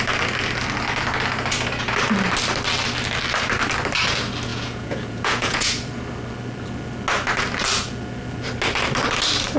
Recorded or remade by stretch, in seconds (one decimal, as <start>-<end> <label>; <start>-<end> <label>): 0.0-4.5 recorded; 4.5-5.7 remade; 5.7-9.6 recorded